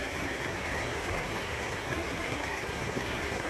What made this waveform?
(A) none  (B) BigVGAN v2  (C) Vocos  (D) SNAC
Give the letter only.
D